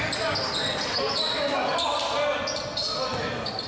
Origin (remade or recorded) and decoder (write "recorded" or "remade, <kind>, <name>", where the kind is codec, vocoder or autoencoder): recorded